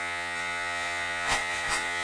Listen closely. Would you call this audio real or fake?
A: fake